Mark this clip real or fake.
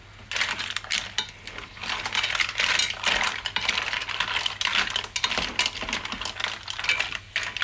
real